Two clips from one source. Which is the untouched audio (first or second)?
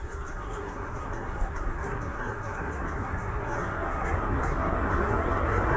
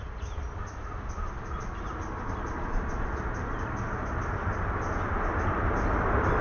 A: second